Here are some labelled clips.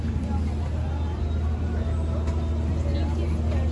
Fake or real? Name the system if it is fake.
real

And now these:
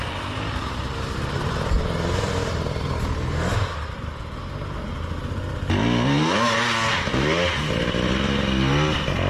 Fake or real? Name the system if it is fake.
real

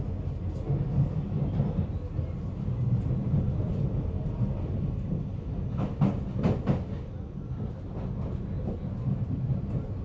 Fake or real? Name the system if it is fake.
real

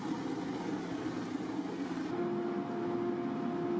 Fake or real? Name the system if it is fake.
real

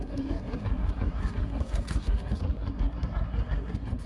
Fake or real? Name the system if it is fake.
fake, codec, SNAC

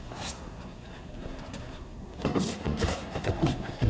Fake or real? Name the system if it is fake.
fake, codec, SNAC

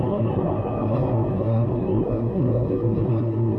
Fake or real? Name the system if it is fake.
fake, codec, SNAC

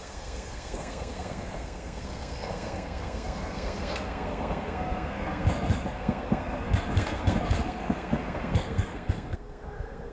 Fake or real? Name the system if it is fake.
fake, codec, SNAC